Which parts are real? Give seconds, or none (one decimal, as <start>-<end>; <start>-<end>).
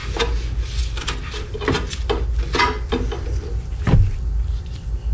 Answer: 0.0-5.1